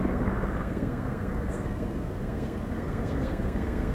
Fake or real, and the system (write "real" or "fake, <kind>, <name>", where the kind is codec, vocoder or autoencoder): fake, codec, SNAC